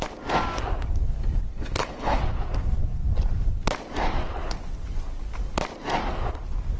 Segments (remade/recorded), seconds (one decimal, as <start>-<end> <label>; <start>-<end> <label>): 0.0-1.5 recorded; 1.5-2.2 remade; 2.2-6.8 recorded